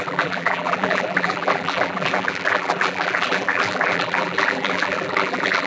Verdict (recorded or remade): remade